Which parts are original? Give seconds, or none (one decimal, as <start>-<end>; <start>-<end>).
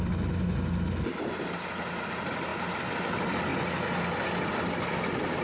0.0-5.4